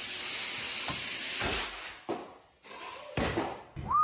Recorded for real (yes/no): yes